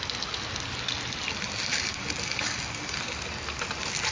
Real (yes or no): yes